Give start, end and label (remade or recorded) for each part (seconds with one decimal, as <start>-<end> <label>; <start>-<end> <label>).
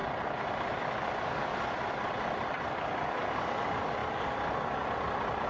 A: 0.0-0.8 recorded; 0.8-1.5 remade; 1.5-2.7 recorded; 2.7-5.5 remade